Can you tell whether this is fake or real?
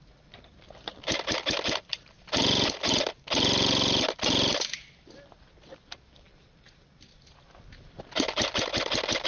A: real